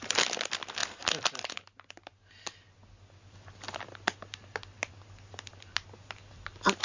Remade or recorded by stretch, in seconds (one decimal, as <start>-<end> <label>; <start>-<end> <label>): 0.0-6.8 recorded